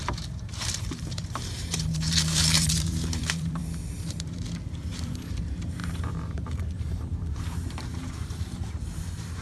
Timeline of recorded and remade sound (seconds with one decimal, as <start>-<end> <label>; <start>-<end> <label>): 0.0-3.6 remade; 3.6-4.1 recorded; 4.1-9.4 remade